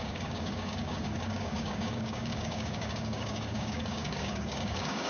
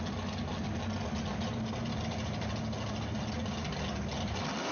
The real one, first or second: second